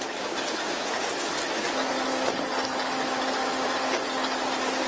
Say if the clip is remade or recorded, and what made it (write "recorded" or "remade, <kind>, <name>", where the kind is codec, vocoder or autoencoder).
recorded